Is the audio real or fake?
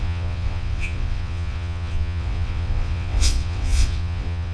fake